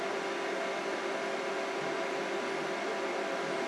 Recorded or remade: recorded